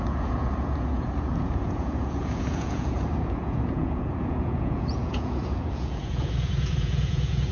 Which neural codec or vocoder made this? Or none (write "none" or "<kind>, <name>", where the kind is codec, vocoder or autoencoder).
vocoder, Vocos